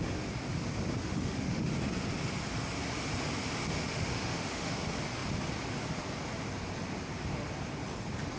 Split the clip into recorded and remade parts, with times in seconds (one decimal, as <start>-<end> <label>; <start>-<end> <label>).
0.0-1.0 recorded; 1.0-1.7 remade; 1.7-3.8 recorded; 3.8-4.7 remade; 4.7-8.4 recorded